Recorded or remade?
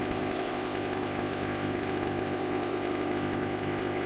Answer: remade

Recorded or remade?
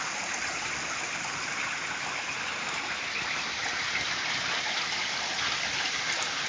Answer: recorded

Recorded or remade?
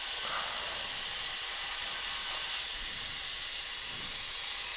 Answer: recorded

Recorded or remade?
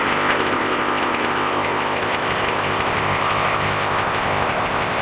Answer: remade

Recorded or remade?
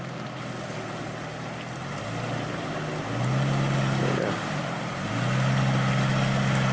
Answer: recorded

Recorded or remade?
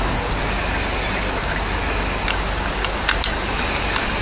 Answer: recorded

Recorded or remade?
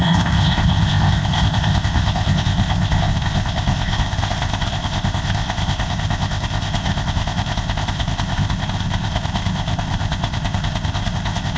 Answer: remade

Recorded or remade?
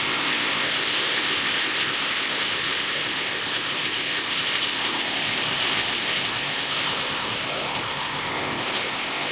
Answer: remade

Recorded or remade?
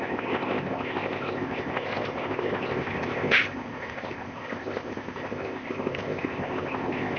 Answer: remade